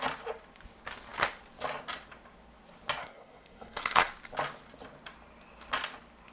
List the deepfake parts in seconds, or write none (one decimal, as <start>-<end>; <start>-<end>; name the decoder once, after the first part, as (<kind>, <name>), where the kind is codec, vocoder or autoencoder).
3.0-4.1 (codec, SNAC)